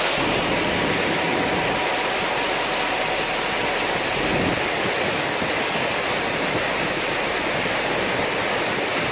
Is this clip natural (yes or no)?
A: yes